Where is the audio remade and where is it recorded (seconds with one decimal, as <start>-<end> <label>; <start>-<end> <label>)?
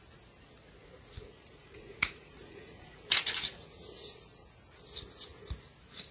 0.0-0.8 recorded; 0.8-4.1 remade; 4.1-6.1 recorded